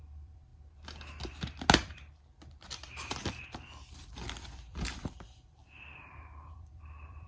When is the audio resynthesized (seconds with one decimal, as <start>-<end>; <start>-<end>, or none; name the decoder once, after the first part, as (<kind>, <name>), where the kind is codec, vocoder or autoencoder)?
0.0-0.5 (vocoder, BigVGAN v2); 3.9-5.6; 6.5-7.3